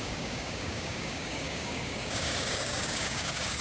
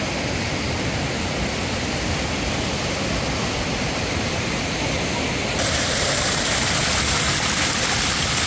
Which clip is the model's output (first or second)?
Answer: first